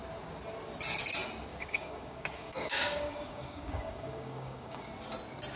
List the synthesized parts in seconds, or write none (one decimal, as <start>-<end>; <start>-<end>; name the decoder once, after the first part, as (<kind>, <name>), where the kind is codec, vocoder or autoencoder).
1.5-4.9 (codec, DAC)